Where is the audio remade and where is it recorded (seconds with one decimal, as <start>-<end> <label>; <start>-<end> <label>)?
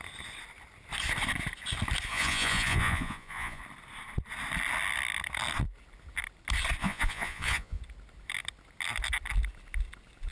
0.0-2.1 recorded; 2.1-3.6 remade; 3.6-6.8 recorded; 6.8-7.8 remade; 7.8-10.3 recorded